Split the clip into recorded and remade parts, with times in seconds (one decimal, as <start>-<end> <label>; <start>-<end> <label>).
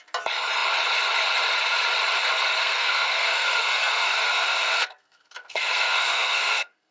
0.0-2.6 recorded; 2.6-6.9 remade